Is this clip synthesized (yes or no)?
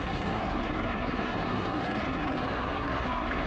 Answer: yes